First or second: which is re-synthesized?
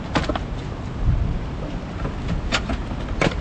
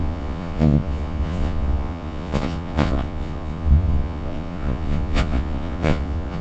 second